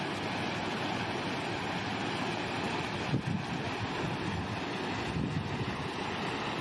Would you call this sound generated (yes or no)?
no